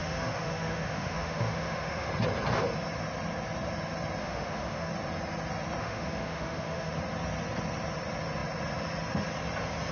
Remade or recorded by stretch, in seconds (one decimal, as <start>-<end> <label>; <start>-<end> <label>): 0.0-2.1 remade; 2.1-4.2 recorded; 4.2-4.9 remade; 4.9-5.8 recorded; 5.8-6.9 remade; 6.9-9.9 recorded